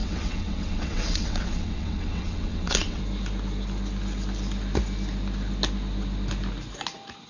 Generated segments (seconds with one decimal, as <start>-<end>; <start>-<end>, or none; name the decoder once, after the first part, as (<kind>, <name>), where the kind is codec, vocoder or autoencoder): 0.0-3.0 (vocoder, WaveNeXt)